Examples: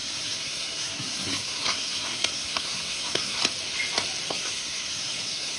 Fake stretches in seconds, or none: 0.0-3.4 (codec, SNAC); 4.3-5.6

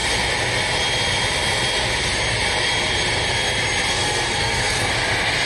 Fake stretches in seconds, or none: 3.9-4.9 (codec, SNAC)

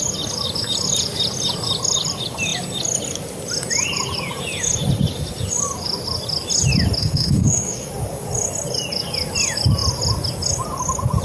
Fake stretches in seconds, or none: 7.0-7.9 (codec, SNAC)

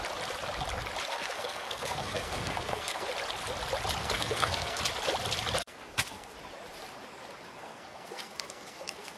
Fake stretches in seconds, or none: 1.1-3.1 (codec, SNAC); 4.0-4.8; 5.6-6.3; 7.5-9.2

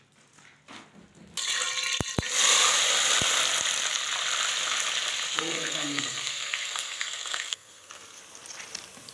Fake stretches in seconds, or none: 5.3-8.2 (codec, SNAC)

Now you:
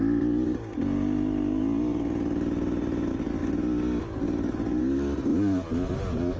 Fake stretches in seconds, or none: none

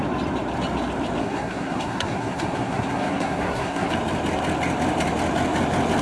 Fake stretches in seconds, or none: 1.2-3.9 (codec, SNAC)